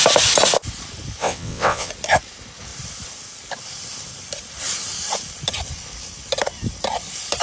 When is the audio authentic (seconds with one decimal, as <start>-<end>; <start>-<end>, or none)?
0.0-1.2; 1.9-7.4

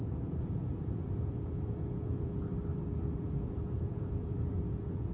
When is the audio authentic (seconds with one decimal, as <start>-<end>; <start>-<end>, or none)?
2.5-3.2